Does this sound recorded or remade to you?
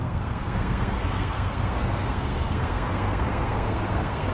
remade